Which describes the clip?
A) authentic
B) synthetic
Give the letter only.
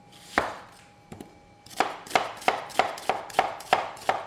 B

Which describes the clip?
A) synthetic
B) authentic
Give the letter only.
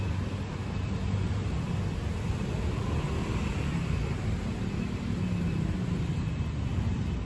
B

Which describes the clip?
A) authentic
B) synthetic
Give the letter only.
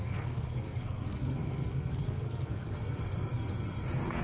B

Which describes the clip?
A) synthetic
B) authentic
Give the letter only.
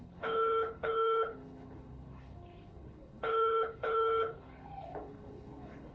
A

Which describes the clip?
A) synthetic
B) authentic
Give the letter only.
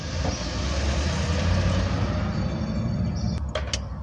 B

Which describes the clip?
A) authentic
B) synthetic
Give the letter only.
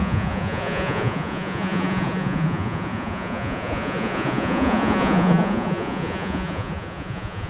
B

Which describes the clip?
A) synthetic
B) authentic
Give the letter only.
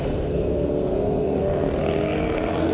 A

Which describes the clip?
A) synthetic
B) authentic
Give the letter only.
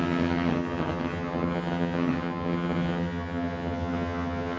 A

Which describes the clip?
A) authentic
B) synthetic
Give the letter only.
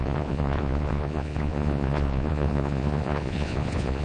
B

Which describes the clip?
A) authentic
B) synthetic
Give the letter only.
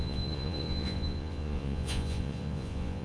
B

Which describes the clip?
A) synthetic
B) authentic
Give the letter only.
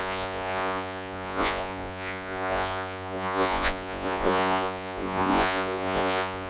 A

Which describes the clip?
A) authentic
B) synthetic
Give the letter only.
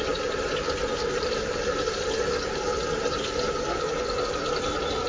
A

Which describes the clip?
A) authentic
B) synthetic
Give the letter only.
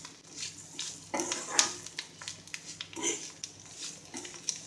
A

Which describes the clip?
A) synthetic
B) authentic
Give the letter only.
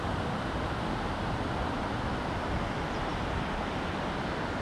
B